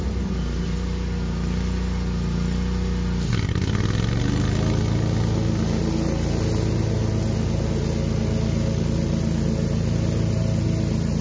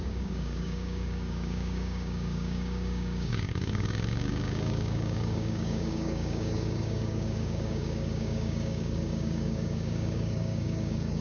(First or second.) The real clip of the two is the first